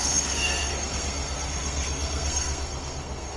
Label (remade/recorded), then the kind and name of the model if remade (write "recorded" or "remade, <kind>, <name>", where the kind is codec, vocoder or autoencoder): remade, codec, SNAC